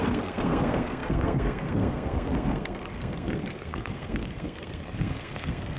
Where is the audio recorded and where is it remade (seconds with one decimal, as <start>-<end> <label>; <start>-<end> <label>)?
0.0-5.8 remade